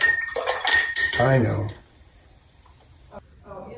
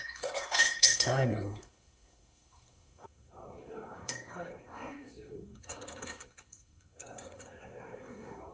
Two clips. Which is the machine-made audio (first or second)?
second